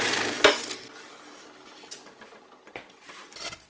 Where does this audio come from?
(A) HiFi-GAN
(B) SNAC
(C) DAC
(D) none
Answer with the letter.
D